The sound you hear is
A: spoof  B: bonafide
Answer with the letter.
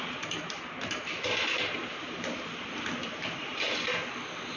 B